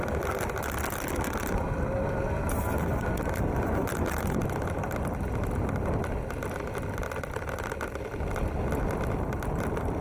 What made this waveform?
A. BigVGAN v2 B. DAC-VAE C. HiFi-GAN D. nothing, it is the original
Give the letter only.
D